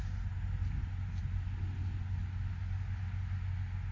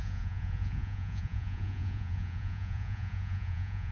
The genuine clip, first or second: first